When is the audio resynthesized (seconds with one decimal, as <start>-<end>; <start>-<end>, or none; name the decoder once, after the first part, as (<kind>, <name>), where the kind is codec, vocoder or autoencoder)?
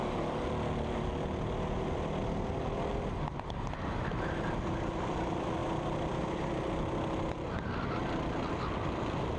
none